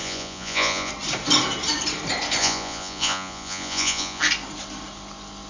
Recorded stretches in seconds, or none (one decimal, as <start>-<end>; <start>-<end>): 0.9-2.4; 4.2-5.5